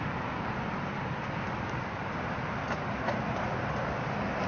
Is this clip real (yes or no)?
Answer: yes